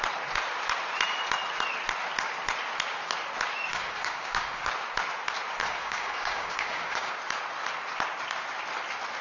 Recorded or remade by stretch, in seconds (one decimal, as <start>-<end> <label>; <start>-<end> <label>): 0.0-3.7 recorded; 3.7-4.7 remade; 4.7-5.6 recorded; 5.6-7.1 remade; 7.1-9.2 recorded